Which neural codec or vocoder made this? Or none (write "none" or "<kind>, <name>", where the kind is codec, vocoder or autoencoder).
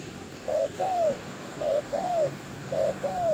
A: codec, DAC